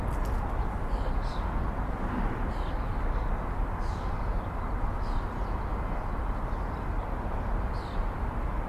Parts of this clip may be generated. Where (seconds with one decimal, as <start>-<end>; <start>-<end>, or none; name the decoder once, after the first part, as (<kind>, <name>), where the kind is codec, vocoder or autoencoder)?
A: none